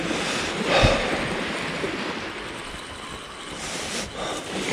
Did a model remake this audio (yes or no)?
no